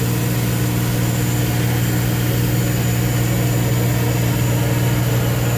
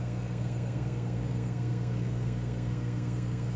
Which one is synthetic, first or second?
second